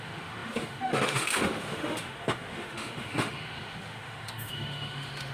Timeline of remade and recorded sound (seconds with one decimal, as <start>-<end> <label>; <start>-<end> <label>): 0.0-5.3 remade